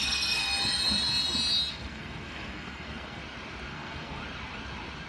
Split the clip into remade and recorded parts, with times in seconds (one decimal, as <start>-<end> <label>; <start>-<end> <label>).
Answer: 0.0-0.4 remade; 0.4-1.7 recorded; 1.7-3.2 remade; 3.2-3.7 recorded; 3.7-4.2 remade; 4.2-5.1 recorded